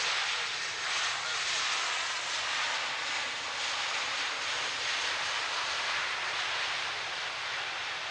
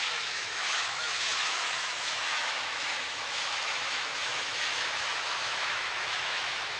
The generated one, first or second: second